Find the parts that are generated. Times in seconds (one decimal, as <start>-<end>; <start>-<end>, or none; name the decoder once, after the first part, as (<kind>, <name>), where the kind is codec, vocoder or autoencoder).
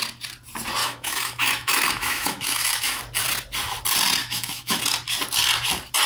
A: 0.8-3.0 (autoencoder, DAC-VAE); 4.2-4.8